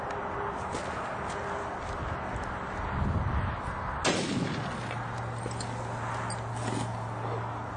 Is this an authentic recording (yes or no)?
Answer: yes